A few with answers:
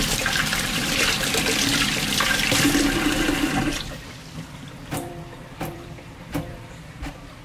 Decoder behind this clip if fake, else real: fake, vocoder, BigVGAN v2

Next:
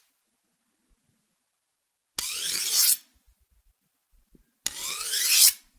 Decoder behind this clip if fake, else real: real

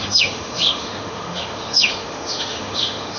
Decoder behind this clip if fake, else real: fake, autoencoder, DAC-VAE